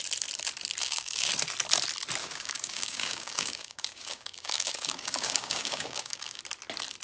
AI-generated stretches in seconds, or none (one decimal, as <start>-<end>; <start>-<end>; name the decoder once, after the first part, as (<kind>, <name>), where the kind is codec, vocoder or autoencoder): 0.8-1.3 (codec, DAC); 2.2-6.4